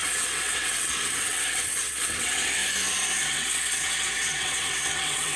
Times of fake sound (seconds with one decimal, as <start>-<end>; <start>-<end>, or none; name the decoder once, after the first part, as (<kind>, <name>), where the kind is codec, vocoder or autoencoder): 0.0-2.6 (vocoder, WaveNeXt); 3.2-5.4

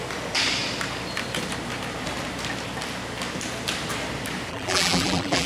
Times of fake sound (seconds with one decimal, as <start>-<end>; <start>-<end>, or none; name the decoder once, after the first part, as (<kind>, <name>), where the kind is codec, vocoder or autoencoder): 4.5-5.5 (vocoder, BigVGAN v2)

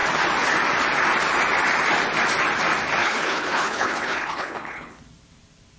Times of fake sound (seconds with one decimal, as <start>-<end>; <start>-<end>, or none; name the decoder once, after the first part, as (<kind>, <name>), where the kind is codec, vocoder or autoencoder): 3.0-5.0 (codec, HILCodec)

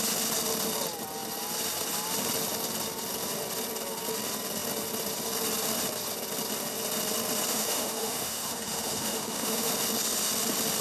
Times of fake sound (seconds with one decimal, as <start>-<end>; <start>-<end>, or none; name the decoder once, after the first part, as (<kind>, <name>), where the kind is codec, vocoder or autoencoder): 7.5-9.7 (autoencoder, DAC-VAE)

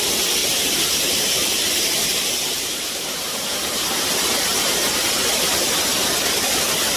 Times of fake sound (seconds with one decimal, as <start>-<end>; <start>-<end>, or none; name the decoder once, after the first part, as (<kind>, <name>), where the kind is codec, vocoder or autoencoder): 0.4-4.1 (vocoder, BigVGAN v2)

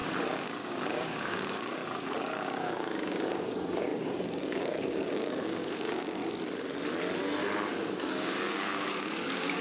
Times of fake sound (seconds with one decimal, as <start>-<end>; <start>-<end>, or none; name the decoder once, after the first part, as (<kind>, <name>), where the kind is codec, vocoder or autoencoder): 0.0-1.8 (codec, DAC); 2.3-6.2; 8.0-9.6

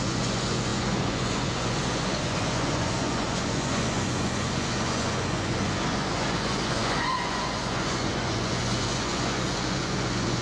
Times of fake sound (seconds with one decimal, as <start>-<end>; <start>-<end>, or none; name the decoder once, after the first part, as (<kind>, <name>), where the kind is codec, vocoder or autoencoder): 0.0-10.4 (vocoder, Vocos)

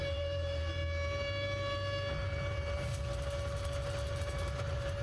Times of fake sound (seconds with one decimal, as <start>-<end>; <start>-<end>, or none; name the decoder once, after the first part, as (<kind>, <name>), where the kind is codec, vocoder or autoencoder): 0.0-0.8 (vocoder, BigVGAN v2); 2.2-2.9; 4.2-5.0